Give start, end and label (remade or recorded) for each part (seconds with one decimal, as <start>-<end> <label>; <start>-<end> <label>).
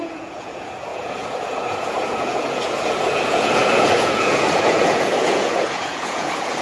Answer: 0.0-6.6 remade